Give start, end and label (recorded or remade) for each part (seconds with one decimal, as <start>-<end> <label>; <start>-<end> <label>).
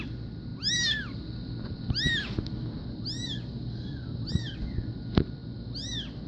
0.0-6.3 recorded